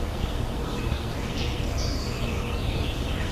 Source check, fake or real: fake